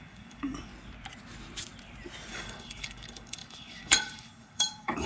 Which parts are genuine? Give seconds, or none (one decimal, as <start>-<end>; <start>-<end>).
0.7-2.3